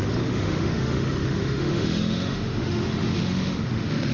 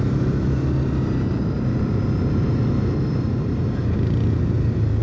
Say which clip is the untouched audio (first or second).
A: second